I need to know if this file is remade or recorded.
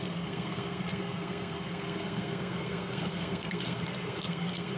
remade